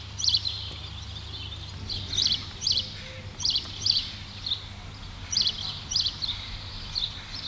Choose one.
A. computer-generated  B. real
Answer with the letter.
B